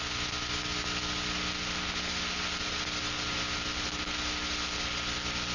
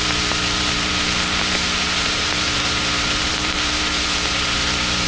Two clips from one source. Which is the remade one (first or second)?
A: second